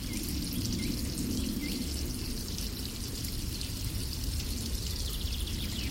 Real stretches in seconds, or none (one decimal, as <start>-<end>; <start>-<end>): 0.0-1.6; 4.9-5.9

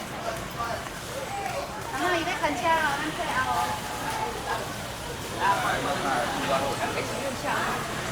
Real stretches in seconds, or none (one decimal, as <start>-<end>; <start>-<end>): none

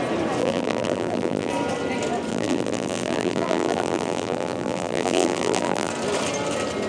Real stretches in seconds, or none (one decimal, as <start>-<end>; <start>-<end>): 0.0-0.4; 1.5-2.3; 5.9-6.9

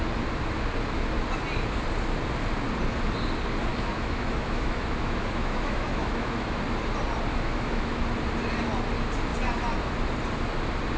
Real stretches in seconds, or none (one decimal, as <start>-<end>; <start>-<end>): 0.0-3.7; 6.6-7.3; 8.0-11.0

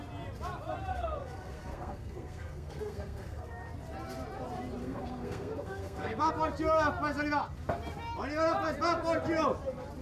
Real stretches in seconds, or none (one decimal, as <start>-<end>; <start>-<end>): 0.0-0.9; 3.5-4.8; 6.3-10.0

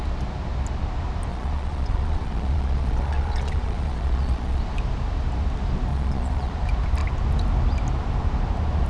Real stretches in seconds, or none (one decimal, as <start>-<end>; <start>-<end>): 0.0-1.3; 4.6-5.9; 6.5-8.9

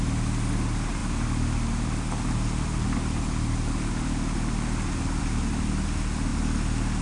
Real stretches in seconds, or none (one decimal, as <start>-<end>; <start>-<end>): 0.0-7.0

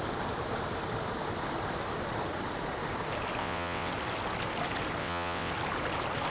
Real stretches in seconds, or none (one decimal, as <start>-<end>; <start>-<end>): 0.0-3.4; 3.9-5.0; 5.5-6.3